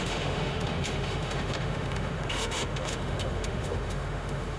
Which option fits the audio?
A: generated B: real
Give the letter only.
A